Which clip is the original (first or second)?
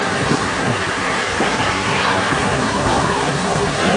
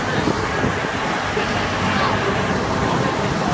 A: second